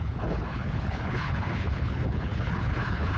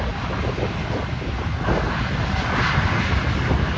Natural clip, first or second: second